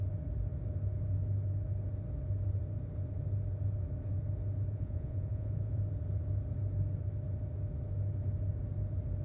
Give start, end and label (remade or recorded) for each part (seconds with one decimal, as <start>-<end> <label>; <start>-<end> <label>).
0.0-4.7 recorded; 4.7-5.8 remade; 5.8-9.2 recorded